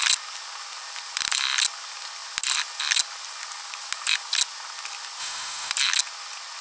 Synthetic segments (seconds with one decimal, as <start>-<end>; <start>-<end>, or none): 5.2-5.7